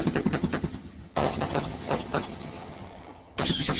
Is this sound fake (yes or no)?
yes